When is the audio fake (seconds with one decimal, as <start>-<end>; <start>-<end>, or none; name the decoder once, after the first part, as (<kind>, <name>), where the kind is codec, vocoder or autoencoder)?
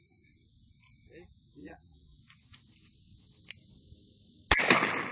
1.6-2.2 (vocoder, BigVGAN v2)